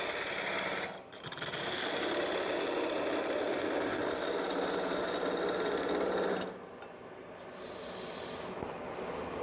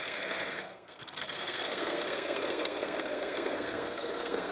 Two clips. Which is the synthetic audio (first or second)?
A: second